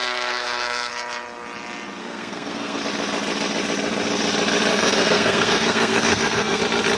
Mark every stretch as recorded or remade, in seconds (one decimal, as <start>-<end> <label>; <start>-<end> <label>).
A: 0.0-0.9 remade; 0.9-2.0 recorded; 2.0-2.8 remade; 2.8-4.7 recorded; 4.7-6.6 remade; 6.6-7.0 recorded